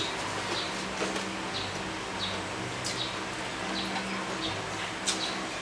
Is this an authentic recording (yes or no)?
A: yes